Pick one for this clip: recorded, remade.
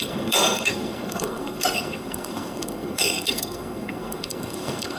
remade